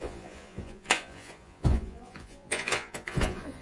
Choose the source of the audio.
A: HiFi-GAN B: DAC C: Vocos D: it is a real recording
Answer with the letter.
C